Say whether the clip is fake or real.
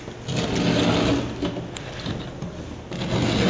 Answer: real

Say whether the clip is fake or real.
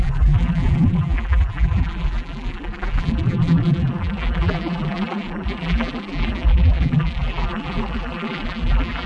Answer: fake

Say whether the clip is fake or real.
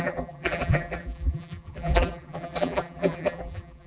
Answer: fake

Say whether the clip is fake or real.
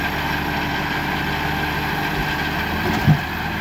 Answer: real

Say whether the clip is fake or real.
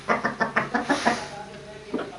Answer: real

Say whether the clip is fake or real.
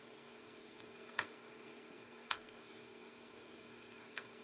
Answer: fake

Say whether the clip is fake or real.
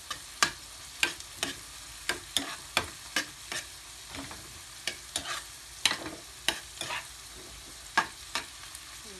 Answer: real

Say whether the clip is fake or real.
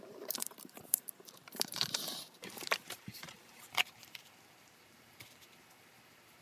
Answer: fake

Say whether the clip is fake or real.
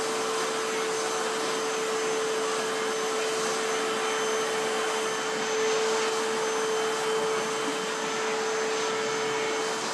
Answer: real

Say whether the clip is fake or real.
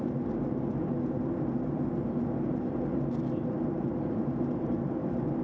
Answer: real